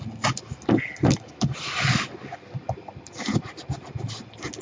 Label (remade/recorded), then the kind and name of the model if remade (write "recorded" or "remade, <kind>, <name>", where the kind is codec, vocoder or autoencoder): recorded